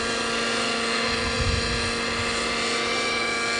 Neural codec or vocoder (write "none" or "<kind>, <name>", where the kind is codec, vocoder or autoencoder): none